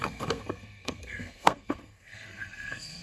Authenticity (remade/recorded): remade